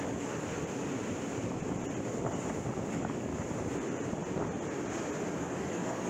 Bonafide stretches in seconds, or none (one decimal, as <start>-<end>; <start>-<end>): 0.5-2.9; 3.3-5.4